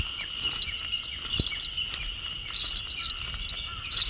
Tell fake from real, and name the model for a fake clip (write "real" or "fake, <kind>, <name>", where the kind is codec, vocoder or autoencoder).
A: real